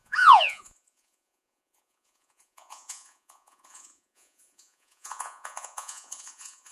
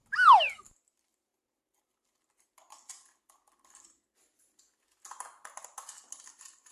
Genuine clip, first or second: second